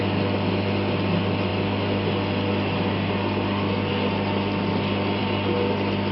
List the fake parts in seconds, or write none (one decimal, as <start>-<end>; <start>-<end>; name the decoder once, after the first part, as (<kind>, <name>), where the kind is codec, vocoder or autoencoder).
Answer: none